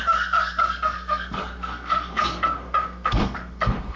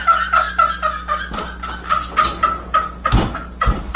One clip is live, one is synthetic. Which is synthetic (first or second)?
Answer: first